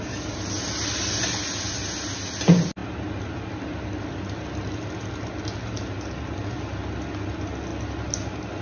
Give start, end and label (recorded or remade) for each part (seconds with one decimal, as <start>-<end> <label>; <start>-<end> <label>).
0.0-8.6 recorded